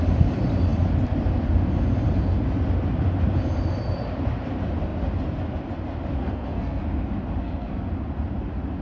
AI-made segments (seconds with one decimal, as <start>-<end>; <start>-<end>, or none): 6.2-6.8; 7.4-7.9